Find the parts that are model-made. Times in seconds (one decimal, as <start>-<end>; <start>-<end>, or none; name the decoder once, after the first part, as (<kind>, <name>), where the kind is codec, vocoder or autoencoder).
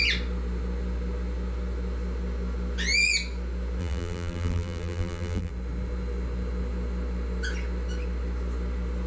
3.8-5.5 (vocoder, BigVGAN v2)